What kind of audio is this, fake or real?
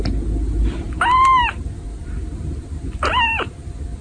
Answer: real